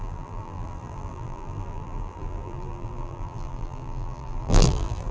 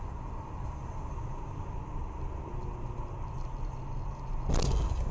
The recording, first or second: second